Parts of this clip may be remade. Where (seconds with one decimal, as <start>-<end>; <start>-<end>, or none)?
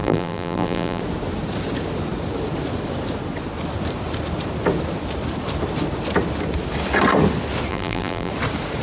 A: 0.0-1.0; 7.7-8.3